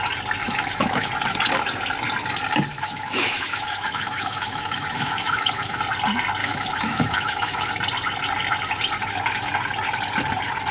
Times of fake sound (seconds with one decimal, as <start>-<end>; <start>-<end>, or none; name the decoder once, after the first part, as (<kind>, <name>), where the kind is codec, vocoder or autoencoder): 0.4-1.1 (autoencoder, DAC-VAE); 2.7-5.8; 6.4-7.7